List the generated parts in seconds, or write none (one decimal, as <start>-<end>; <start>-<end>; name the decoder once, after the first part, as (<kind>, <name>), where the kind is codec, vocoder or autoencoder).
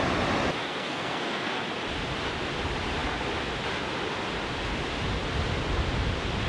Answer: 0.6-1.6 (codec, SNAC)